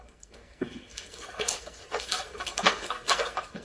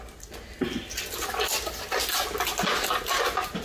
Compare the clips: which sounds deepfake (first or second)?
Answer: first